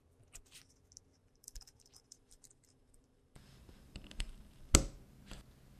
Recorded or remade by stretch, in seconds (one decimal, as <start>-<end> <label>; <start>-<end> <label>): 0.0-1.2 recorded; 1.2-4.7 remade; 4.7-5.8 recorded